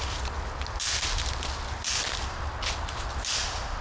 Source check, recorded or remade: recorded